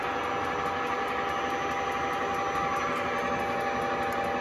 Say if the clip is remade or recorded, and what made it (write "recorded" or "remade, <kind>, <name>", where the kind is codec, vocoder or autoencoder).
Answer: recorded